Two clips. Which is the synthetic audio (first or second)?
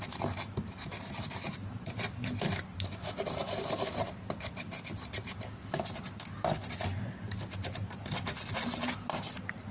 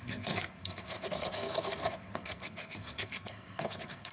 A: second